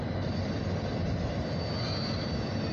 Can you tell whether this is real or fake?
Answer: real